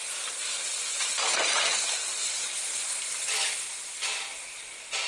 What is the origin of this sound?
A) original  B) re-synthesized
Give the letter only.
A